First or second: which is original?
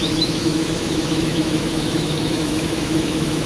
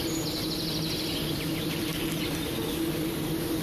second